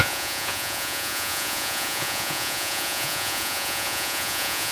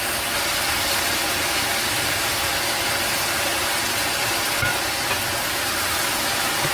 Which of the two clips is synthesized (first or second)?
first